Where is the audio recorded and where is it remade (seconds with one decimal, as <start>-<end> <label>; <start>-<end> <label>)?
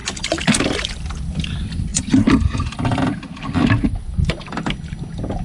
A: 0.0-1.9 recorded; 1.9-2.7 remade; 2.7-5.4 recorded